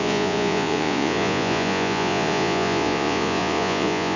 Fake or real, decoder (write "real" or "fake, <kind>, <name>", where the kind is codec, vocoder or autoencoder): fake, vocoder, Vocos